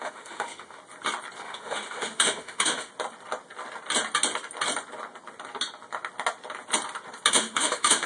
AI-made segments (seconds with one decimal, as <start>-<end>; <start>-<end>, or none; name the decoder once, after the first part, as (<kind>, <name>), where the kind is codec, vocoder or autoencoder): 0.0-0.8 (autoencoder, DAC-VAE); 1.4-2.9; 7.3-8.1